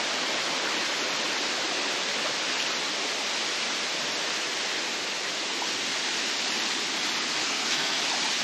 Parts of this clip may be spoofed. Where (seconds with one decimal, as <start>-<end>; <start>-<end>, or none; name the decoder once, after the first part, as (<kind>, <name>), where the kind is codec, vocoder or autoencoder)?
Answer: 7.4-8.0 (codec, SNAC)